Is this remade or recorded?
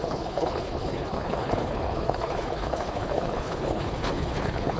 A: remade